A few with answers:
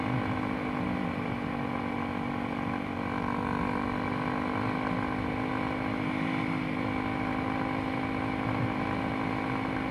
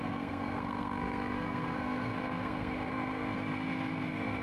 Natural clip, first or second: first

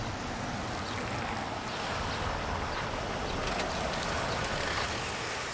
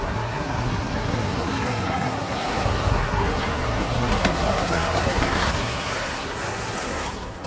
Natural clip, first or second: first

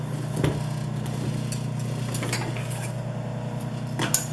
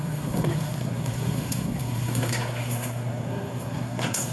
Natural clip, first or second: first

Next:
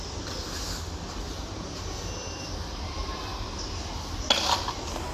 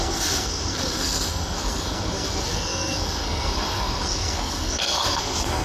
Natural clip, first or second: first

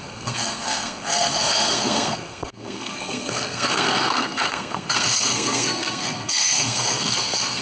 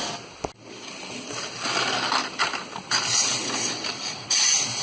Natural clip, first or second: second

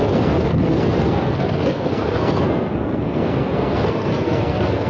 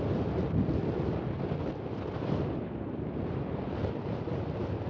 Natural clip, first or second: second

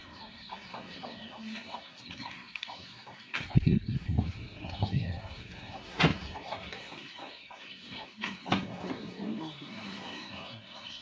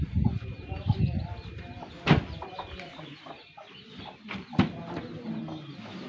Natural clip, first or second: second